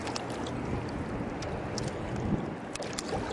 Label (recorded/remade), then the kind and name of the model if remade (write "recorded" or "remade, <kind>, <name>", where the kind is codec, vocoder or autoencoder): recorded